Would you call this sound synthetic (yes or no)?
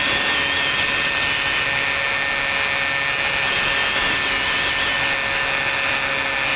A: no